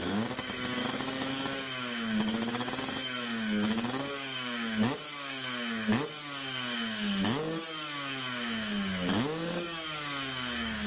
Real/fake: fake